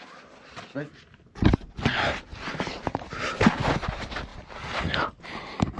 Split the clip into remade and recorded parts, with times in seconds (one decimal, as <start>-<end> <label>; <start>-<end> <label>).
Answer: 0.0-5.8 recorded